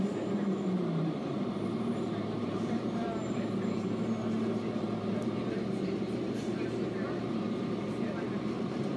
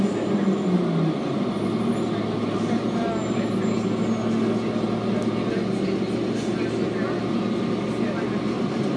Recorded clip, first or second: second